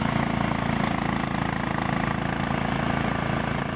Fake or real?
real